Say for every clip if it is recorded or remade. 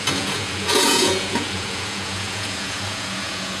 remade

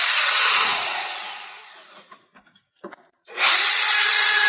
remade